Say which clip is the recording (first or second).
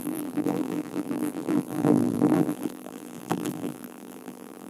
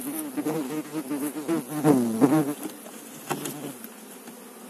second